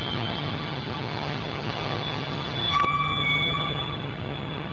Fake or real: fake